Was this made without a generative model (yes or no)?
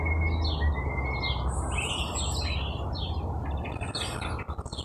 yes